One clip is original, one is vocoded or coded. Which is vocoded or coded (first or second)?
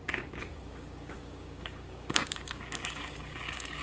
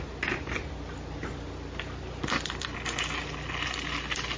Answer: first